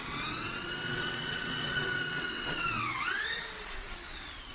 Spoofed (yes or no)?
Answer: yes